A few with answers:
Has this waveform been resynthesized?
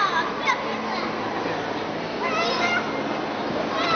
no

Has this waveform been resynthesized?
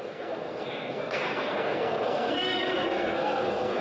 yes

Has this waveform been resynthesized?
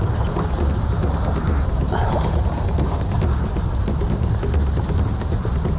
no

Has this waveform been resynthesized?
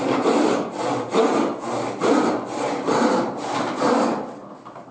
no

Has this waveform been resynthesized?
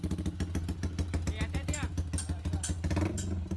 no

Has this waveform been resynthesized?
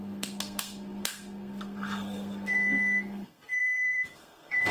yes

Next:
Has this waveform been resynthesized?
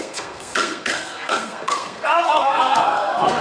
yes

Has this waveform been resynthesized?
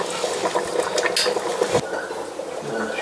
no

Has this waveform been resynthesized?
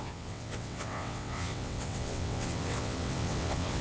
yes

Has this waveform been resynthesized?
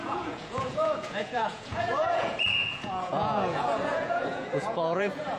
yes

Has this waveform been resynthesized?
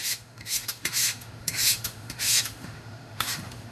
yes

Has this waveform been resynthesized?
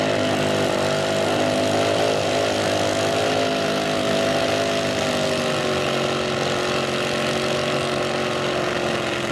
no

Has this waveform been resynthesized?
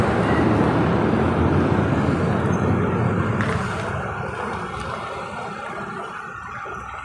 no